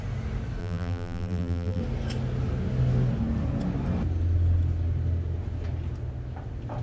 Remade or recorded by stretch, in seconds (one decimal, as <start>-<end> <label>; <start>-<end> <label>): 0.0-0.6 recorded; 0.6-1.8 remade; 1.8-6.8 recorded